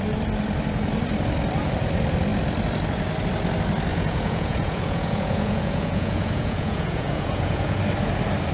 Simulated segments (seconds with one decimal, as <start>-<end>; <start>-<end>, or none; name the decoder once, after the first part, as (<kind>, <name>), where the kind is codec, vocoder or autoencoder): 3.9-7.8 (vocoder, Vocos)